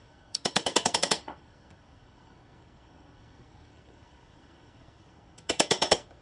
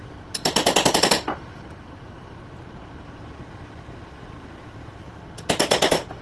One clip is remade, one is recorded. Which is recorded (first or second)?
second